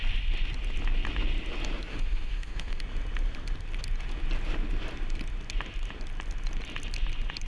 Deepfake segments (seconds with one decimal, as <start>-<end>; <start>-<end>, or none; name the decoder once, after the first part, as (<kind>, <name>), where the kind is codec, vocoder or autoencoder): 1.9-2.8 (autoencoder, DAC-VAE)